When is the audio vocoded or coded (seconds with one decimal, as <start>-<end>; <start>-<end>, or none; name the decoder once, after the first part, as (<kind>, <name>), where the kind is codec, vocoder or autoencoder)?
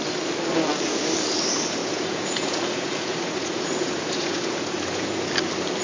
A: 1.8-5.3 (vocoder, Vocos)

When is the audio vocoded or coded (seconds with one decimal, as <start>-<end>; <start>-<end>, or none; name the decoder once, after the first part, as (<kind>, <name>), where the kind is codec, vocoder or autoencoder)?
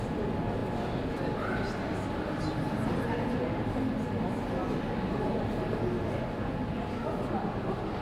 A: none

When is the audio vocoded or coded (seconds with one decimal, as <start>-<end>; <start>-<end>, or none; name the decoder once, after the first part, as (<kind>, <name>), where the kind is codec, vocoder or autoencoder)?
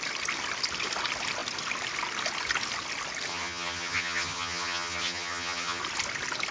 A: 3.3-5.8 (vocoder, HiFi-GAN)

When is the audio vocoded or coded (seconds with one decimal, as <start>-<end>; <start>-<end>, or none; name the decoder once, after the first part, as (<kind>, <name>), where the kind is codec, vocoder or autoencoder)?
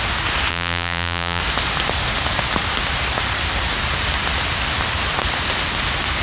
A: 0.5-1.4 (vocoder, BigVGAN v2)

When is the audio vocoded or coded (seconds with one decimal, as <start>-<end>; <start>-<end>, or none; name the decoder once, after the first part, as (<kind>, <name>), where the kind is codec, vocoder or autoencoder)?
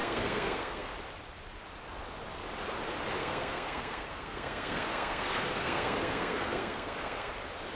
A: 0.0-0.9 (codec, SNAC); 3.2-7.3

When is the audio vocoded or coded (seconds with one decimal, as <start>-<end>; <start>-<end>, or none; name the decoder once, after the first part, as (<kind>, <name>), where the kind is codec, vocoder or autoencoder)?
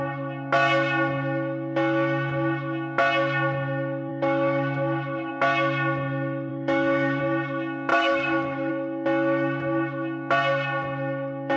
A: 4.1-5.3 (autoencoder, DAC-VAE); 6.5-7.2; 7.9-8.7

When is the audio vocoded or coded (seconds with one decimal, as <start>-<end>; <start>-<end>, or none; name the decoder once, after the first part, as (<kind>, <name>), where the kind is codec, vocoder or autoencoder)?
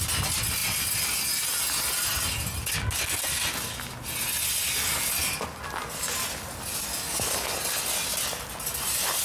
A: none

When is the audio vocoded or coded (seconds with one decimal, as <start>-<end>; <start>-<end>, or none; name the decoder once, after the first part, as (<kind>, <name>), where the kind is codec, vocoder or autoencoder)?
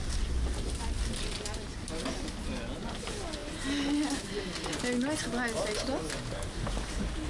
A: none